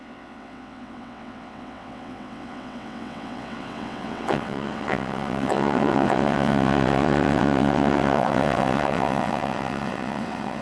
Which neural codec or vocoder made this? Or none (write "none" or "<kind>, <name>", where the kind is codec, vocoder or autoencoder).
vocoder, WaveNeXt